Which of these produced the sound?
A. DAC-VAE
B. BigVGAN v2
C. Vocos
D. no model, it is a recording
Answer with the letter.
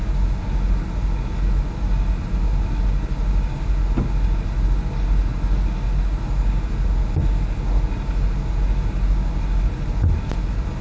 D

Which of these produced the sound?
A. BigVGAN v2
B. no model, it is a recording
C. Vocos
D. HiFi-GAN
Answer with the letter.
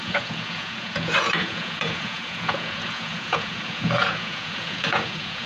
C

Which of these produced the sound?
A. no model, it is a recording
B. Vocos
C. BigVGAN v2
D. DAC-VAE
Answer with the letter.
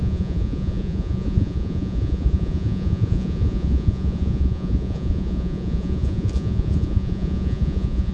B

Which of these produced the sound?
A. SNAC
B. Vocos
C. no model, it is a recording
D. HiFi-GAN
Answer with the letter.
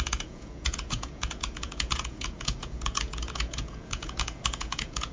B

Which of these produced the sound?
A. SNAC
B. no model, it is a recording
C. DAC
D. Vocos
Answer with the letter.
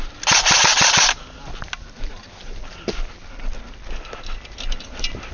B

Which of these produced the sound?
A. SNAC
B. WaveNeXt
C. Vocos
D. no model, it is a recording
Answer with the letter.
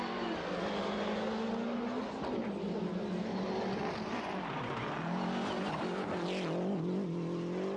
D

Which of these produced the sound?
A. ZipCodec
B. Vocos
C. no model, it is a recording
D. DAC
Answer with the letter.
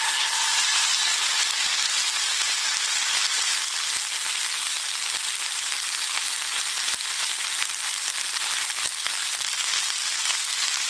C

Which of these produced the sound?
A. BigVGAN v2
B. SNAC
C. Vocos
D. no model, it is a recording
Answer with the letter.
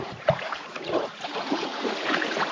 C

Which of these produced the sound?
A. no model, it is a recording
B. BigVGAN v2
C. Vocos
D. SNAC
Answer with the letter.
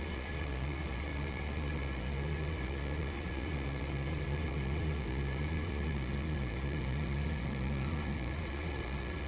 C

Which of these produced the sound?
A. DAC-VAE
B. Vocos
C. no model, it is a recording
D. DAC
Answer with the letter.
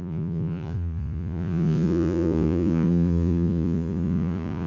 B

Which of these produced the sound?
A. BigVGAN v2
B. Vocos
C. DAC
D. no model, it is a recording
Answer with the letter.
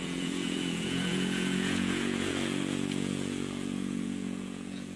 B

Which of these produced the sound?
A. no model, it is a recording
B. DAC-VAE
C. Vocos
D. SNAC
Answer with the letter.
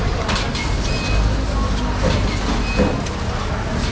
A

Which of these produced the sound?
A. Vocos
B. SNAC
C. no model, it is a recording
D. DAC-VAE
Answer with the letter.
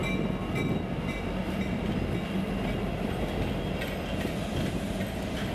C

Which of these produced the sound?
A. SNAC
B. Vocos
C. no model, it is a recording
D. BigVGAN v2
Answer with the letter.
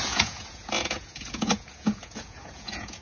B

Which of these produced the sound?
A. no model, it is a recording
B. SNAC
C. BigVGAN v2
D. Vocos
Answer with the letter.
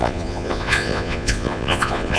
D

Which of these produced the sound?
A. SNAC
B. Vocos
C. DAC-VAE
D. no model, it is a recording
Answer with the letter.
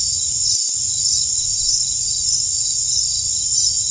B